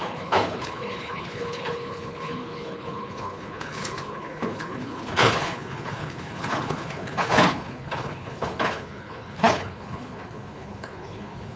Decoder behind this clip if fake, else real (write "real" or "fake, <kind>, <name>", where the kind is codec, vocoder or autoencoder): fake, codec, HILCodec